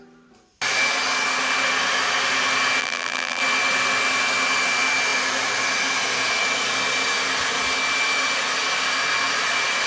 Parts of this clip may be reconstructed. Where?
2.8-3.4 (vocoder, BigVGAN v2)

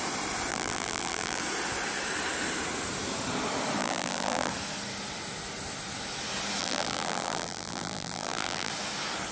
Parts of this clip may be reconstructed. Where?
0.5-1.4 (vocoder, BigVGAN v2); 3.8-4.5; 6.6-8.7

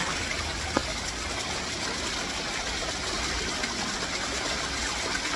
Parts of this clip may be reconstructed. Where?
none

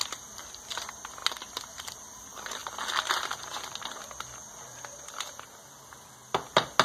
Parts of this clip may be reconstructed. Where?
none

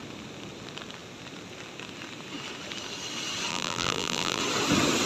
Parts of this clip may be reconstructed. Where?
3.5-4.4 (vocoder, BigVGAN v2)

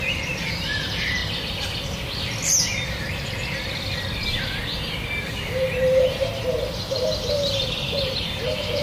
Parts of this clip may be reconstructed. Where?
0.0-1.2 (vocoder, BigVGAN v2); 5.3-6.3; 6.9-8.8

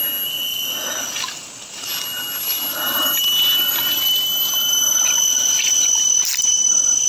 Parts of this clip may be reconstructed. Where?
none

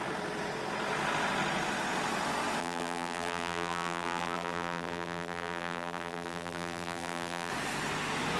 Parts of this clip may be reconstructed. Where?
2.6-7.5 (vocoder, BigVGAN v2)